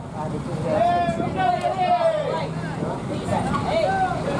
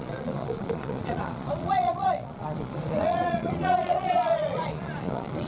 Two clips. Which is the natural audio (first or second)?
first